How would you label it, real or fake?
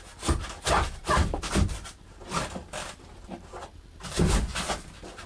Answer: real